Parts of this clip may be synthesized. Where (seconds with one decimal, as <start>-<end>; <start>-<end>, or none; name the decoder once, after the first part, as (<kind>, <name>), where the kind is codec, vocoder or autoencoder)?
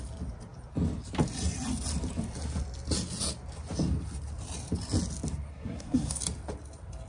5.5-6.2 (codec, SNAC)